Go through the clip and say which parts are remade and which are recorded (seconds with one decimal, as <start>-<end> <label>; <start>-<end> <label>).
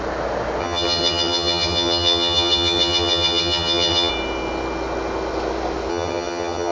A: 0.0-0.6 recorded; 0.6-4.1 remade; 4.1-5.9 recorded; 5.9-6.7 remade